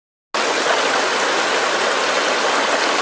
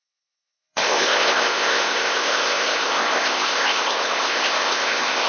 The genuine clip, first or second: first